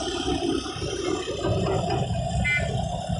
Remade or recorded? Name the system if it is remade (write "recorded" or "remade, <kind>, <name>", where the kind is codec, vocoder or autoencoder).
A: recorded